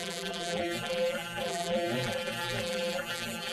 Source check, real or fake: fake